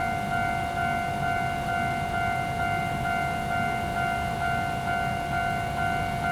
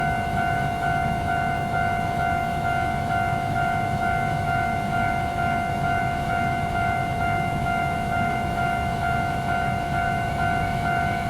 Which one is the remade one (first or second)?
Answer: second